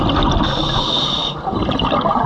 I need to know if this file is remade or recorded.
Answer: recorded